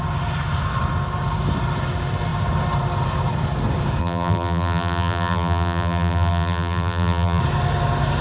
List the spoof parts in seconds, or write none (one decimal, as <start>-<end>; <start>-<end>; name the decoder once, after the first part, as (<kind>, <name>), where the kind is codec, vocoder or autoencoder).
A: 4.0-7.4 (vocoder, BigVGAN v2)